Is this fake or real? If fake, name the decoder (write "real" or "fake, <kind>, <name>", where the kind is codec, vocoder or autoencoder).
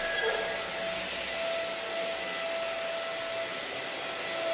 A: real